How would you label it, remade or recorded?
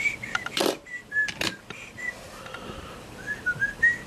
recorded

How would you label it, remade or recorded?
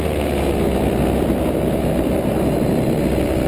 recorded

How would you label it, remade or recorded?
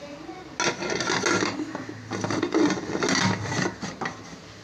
recorded